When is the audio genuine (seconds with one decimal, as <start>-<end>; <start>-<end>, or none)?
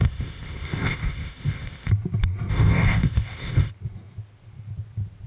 1.9-2.5; 3.7-5.3